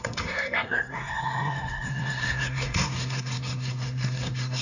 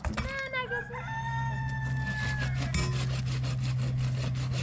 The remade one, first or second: first